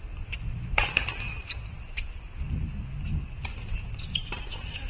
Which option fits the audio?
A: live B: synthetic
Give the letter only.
B